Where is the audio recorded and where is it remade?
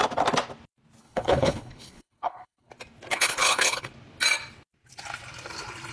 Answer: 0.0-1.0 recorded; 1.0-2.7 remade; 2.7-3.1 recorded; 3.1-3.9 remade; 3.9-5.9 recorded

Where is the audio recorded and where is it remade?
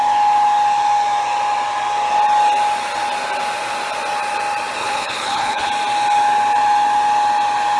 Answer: 0.0-4.8 recorded; 4.8-5.7 remade; 5.7-7.8 recorded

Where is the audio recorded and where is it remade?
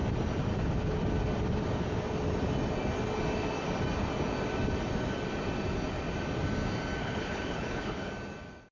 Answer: 0.0-7.0 recorded; 7.0-8.1 remade; 8.1-8.7 recorded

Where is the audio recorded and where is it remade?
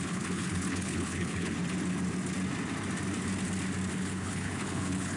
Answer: 0.0-1.6 remade; 1.6-3.9 recorded; 3.9-5.2 remade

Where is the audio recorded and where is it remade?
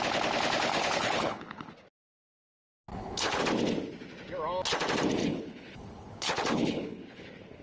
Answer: 0.0-0.7 recorded; 0.7-1.7 remade; 1.7-2.9 recorded; 2.9-3.4 remade; 3.4-5.2 recorded; 5.2-7.6 remade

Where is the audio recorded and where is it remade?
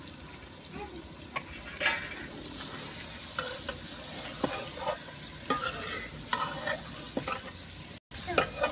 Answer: 0.0-8.7 recorded